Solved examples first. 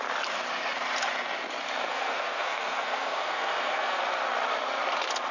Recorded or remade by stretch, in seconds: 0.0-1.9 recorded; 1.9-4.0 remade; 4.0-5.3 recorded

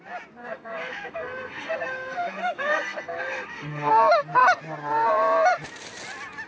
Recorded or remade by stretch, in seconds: 0.0-0.4 recorded; 0.4-3.9 remade; 3.9-6.5 recorded